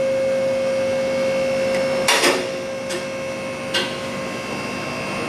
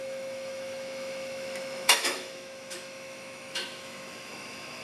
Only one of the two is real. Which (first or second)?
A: first